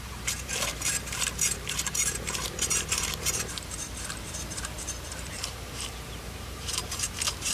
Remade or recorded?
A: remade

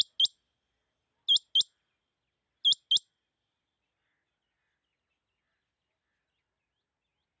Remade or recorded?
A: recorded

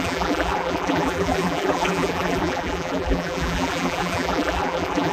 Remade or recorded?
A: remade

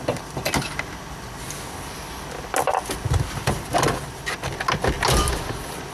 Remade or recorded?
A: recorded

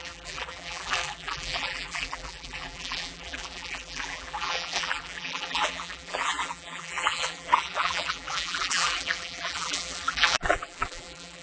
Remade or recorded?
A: remade